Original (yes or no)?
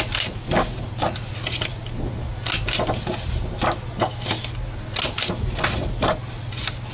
yes